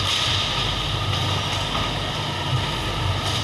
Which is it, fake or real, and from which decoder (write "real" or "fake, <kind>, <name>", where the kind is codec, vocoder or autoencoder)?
real